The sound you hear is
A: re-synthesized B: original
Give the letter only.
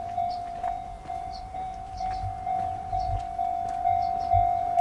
A